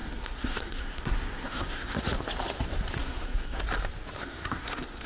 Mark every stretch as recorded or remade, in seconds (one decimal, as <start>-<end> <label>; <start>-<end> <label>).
0.0-2.0 remade; 2.0-3.0 recorded; 3.0-3.6 remade; 3.6-4.2 recorded; 4.2-5.1 remade